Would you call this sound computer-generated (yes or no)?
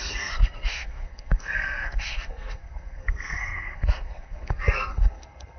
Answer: yes